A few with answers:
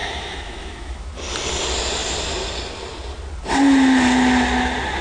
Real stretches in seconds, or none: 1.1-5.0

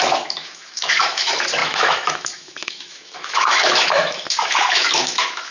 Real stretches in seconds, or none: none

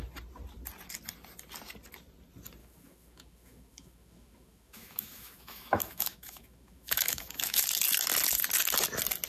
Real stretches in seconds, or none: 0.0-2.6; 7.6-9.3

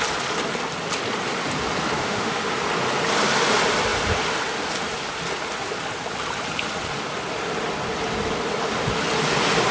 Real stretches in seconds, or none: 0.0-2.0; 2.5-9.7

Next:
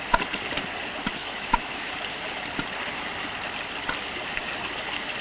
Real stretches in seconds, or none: 0.0-1.2; 1.9-5.2